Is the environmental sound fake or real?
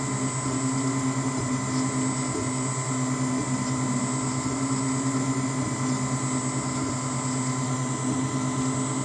real